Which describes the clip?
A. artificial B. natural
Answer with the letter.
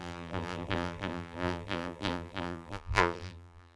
A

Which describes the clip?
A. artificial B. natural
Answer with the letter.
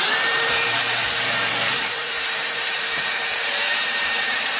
A